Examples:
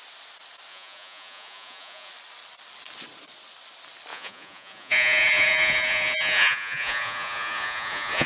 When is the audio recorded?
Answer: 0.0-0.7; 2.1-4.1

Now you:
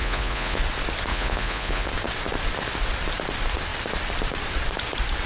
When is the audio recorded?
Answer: 0.6-1.1; 1.9-5.3

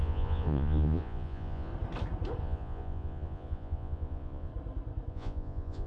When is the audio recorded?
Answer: 1.7-2.4; 4.5-5.1

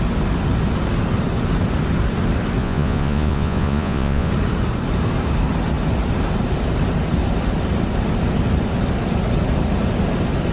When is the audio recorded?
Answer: 0.0-2.6; 4.3-10.5

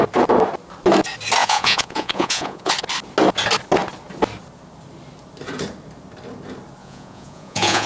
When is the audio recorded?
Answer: 0.0-1.4; 2.7-6.8

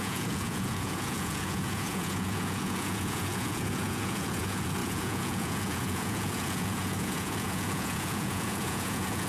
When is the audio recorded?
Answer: none

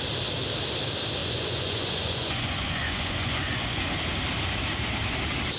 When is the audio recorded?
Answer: 0.0-1.2; 4.0-5.6